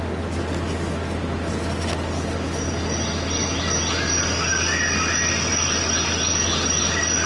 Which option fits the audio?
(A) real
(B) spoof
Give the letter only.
A